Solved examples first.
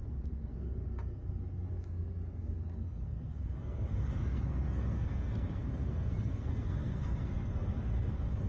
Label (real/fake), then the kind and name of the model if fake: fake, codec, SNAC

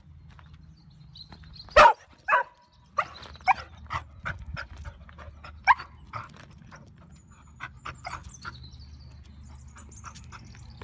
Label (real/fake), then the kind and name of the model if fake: real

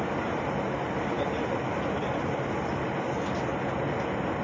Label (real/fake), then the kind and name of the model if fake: real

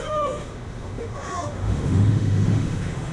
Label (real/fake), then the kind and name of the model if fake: fake, autoencoder, DAC-VAE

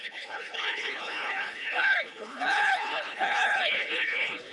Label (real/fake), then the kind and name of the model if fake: fake, codec, HILCodec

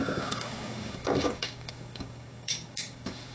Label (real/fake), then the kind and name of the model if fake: fake, codec, DAC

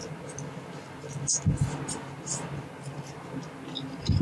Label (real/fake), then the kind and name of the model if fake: real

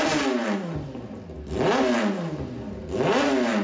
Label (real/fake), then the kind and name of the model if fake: real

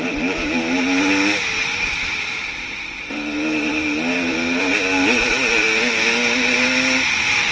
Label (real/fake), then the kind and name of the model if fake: fake, vocoder, BigVGAN v2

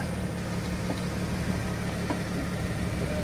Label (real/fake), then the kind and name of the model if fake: real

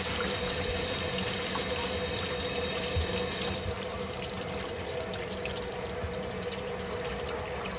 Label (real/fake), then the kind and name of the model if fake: real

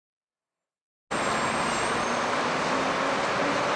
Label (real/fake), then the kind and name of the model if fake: real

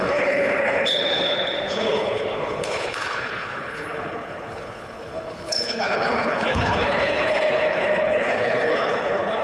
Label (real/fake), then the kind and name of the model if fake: fake, codec, HILCodec